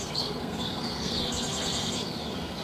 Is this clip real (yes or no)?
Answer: no